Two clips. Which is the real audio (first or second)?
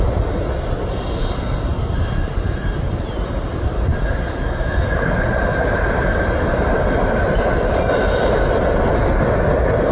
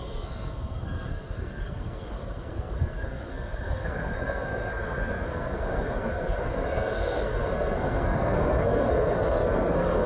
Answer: first